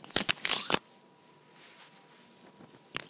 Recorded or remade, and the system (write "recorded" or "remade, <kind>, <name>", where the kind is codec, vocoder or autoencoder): recorded